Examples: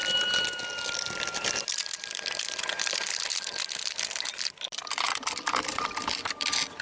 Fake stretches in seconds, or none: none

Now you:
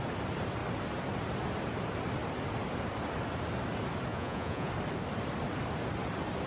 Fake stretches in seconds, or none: 4.1-4.7 (vocoder, Vocos)